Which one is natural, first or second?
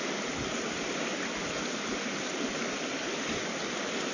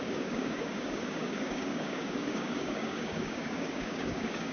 first